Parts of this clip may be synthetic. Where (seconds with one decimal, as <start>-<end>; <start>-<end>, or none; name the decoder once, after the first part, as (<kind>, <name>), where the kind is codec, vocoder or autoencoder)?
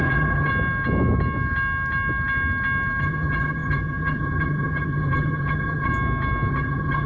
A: 0.0-0.5 (vocoder, HiFi-GAN); 3.0-5.9; 6.5-7.1